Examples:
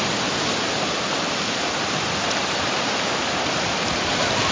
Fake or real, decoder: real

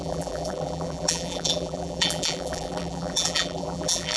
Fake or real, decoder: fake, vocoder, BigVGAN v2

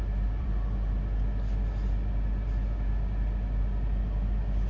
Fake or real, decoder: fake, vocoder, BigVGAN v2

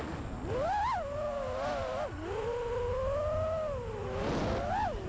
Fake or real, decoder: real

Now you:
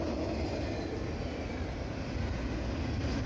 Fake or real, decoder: real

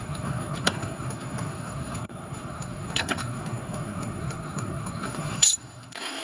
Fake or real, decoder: fake, codec, SNAC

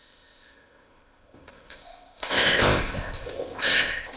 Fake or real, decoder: fake, codec, ZipCodec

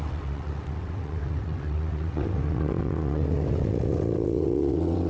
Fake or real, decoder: fake, vocoder, WaveNeXt